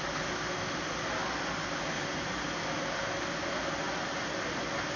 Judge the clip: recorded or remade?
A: recorded